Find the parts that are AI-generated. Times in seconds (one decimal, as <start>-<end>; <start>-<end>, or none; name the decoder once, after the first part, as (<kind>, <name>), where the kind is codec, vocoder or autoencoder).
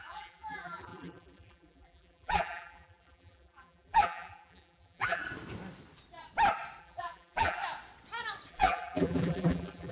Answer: 0.0-5.2 (vocoder, BigVGAN v2); 6.8-7.6; 8.5-9.9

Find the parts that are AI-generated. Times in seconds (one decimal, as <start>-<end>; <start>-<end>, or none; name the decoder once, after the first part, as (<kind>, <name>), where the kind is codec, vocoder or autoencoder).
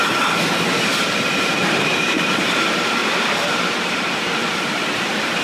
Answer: 2.0-5.4 (vocoder, BigVGAN v2)